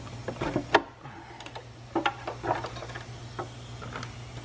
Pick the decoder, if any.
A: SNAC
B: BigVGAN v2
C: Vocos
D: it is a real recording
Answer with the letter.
D